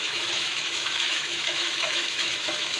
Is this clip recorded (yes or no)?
no